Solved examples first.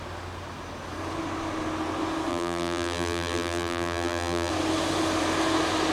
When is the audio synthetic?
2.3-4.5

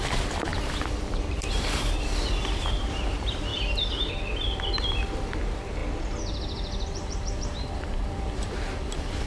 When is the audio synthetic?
0.0-5.8; 6.9-9.3